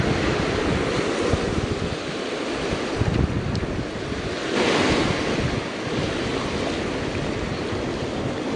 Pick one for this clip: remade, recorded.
recorded